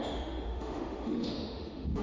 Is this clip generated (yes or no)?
yes